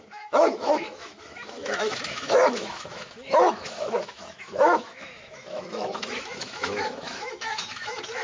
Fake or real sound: fake